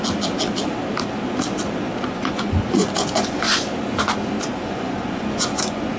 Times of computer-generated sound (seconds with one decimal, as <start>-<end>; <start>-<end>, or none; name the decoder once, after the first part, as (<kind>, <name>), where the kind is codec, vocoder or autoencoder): 2.0-3.5 (vocoder, Vocos); 4.6-6.0